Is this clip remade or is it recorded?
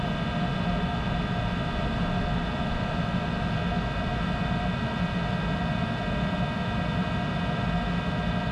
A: recorded